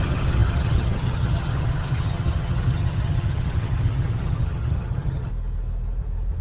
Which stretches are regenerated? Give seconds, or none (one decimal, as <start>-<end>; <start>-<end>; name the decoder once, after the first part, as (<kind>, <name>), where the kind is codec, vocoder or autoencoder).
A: 0.0-5.3 (vocoder, HiFi-GAN)